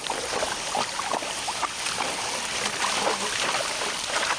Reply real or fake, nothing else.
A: real